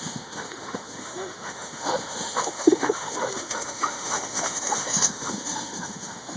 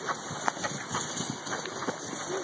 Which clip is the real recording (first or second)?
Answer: second